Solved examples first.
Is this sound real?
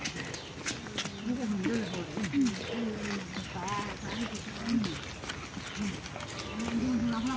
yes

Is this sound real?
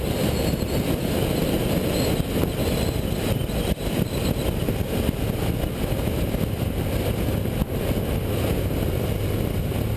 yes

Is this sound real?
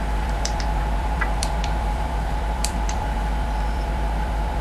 no